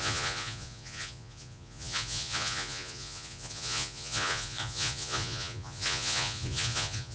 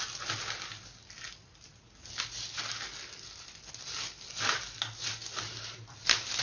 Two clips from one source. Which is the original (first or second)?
second